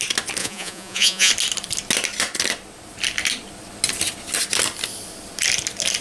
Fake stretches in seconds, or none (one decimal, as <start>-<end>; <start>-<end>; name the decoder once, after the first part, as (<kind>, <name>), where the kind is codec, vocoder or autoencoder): 0.4-1.3 (vocoder, Vocos)